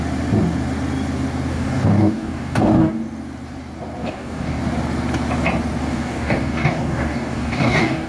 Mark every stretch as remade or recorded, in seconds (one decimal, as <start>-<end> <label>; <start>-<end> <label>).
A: 0.0-1.5 recorded; 1.5-3.0 remade; 3.0-4.0 recorded; 4.0-4.6 remade; 4.6-5.8 recorded; 5.8-8.1 remade